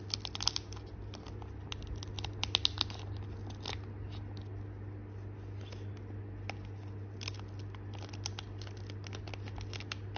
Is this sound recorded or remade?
recorded